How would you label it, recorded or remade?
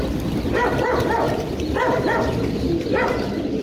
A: recorded